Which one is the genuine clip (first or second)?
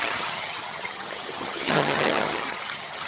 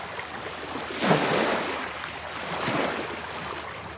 second